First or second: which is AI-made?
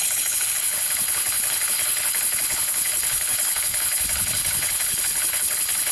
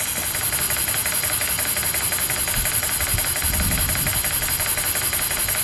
first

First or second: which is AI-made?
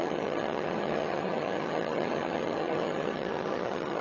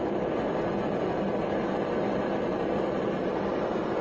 first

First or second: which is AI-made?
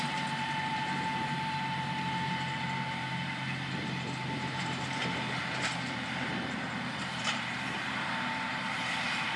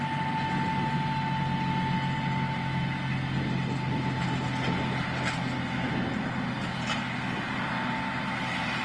first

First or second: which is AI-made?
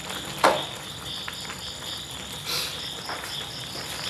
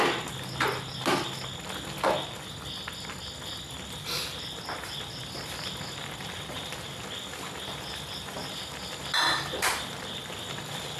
first